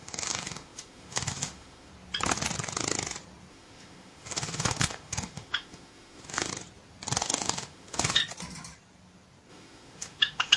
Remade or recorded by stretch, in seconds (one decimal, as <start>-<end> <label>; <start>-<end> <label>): 0.0-1.9 remade; 1.9-3.5 recorded; 3.5-6.5 remade; 6.5-7.2 recorded; 7.2-8.2 remade; 8.2-9.5 recorded; 9.5-10.6 remade